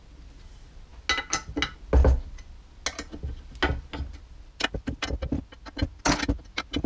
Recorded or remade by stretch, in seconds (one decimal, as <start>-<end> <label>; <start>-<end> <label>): 0.0-6.9 recorded

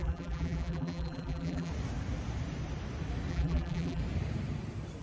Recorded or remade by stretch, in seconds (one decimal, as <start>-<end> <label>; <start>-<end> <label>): 0.0-1.7 remade; 1.7-3.3 recorded; 3.3-4.0 remade; 4.0-5.0 recorded

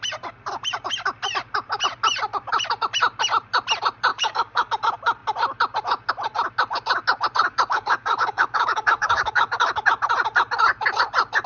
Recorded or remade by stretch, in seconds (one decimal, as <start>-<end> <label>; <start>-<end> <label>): 0.0-4.1 recorded; 4.1-4.7 remade; 4.7-7.5 recorded; 7.5-9.7 remade; 9.7-11.5 recorded

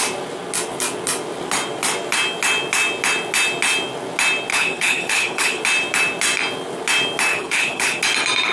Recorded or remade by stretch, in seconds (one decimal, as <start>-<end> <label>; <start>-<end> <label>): 0.0-4.5 recorded; 4.5-5.6 remade; 5.6-7.3 recorded; 7.3-8.0 remade; 8.0-8.5 recorded

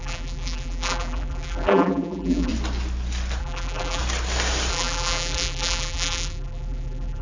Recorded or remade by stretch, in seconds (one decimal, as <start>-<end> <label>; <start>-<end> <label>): 0.0-2.5 remade; 2.5-3.4 recorded; 3.4-4.0 remade; 4.0-4.7 recorded; 4.7-7.2 remade

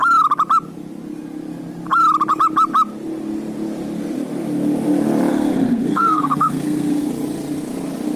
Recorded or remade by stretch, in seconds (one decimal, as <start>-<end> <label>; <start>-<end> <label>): 0.0-5.3 recorded; 5.3-7.1 remade; 7.1-8.2 recorded

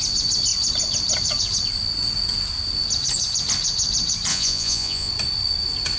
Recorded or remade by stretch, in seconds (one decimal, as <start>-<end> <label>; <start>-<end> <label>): 0.0-4.3 recorded; 4.3-5.1 remade; 5.1-6.0 recorded

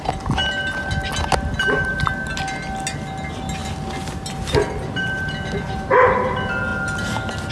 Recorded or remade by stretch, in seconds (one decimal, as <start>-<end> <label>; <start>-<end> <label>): 0.0-7.5 recorded